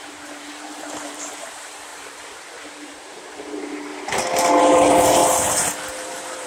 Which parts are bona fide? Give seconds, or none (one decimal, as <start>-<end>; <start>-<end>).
3.9-4.6; 5.2-6.0